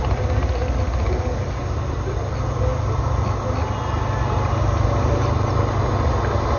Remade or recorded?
recorded